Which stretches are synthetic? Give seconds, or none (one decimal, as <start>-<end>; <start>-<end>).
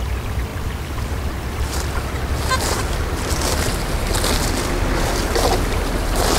none